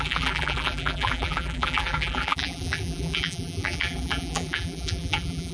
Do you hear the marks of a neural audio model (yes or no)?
yes